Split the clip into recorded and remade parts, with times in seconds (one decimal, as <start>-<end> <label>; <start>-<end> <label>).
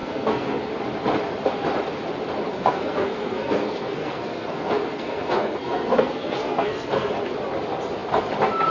0.0-0.7 remade; 0.7-2.5 recorded; 2.5-7.1 remade; 7.1-8.7 recorded